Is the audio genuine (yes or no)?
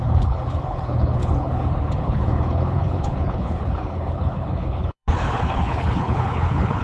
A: no